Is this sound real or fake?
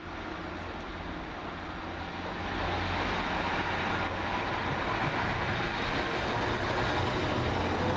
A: real